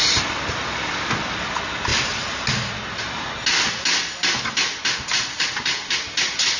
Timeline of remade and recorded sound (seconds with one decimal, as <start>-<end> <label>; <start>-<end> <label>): 0.0-6.6 recorded